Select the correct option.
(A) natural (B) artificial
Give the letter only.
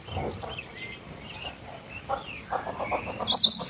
A